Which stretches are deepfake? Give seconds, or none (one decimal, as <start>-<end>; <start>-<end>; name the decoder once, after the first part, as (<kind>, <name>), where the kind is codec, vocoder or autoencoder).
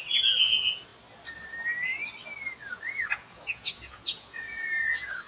0.0-0.9 (vocoder, Vocos); 2.7-5.3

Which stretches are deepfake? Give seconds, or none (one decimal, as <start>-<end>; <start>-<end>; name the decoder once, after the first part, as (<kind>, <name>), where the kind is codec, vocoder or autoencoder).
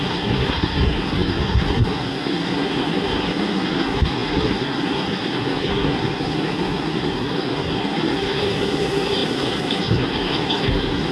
0.0-11.1 (codec, SNAC)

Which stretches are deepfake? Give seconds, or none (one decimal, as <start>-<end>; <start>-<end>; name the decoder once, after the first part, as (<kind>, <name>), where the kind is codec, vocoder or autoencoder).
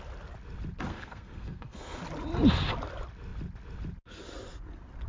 0.9-2.0 (codec, SNAC)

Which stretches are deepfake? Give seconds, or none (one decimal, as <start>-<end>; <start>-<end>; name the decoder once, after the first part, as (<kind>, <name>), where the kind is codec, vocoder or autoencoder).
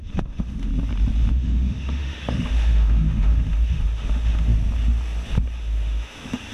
0.0-0.7 (autoencoder, DAC-VAE); 1.3-4.5; 5.6-6.5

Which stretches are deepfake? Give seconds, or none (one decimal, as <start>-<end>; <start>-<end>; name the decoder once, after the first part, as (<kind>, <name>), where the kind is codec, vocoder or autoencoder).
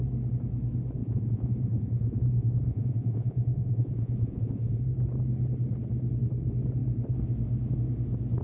1.0-4.8 (vocoder, Vocos)